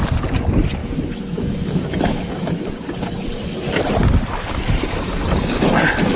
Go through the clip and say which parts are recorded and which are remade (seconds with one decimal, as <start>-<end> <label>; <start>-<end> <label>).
0.0-0.8 recorded; 0.8-2.7 remade; 2.7-6.2 recorded